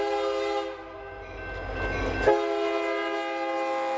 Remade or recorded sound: recorded